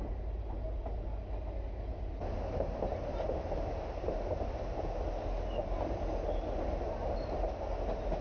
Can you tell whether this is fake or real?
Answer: real